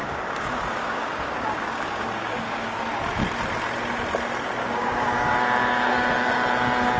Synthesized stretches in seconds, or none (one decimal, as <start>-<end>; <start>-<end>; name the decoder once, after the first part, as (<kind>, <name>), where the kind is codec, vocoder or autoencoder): 0.0-2.8 (codec, DAC); 4.6-5.3